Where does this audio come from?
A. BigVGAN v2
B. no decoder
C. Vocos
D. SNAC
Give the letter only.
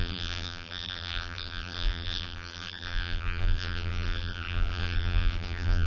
A